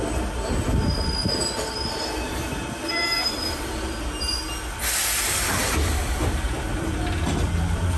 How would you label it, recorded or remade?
recorded